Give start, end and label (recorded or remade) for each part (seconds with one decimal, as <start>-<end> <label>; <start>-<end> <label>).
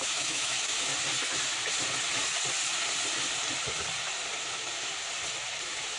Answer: 0.0-0.9 remade; 0.9-4.5 recorded; 4.5-4.9 remade; 4.9-5.6 recorded; 5.6-6.0 remade